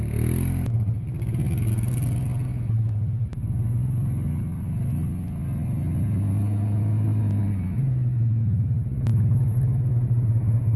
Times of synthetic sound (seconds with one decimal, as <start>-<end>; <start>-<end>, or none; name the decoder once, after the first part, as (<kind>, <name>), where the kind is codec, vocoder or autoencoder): none